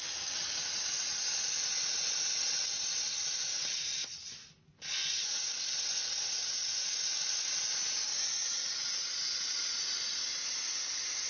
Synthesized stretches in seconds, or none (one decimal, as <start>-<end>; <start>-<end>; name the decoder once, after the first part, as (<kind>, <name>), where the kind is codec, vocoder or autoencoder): 5.0-5.5 (vocoder, Vocos); 6.7-7.5